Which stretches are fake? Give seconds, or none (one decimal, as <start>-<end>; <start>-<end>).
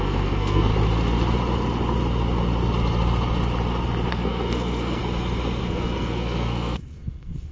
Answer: 0.0-0.7; 4.1-5.0; 5.6-7.5